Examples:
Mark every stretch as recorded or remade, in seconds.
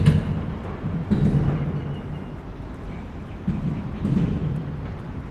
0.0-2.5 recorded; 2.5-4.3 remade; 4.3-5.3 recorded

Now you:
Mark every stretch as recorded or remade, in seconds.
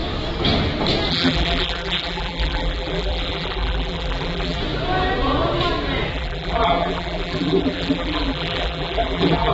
0.0-1.1 recorded; 1.1-4.6 remade; 4.6-6.1 recorded; 6.1-9.5 remade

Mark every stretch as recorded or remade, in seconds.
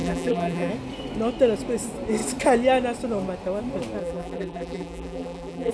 0.0-0.7 remade; 0.7-4.0 recorded; 4.0-5.7 remade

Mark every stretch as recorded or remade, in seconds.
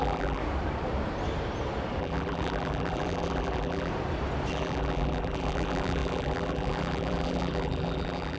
0.0-0.4 remade; 0.4-2.0 recorded; 2.0-3.9 remade; 3.9-4.5 recorded; 4.5-8.4 remade